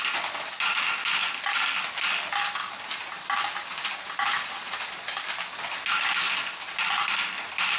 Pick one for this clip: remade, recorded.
recorded